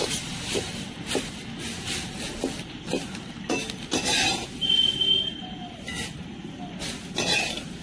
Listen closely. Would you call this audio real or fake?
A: real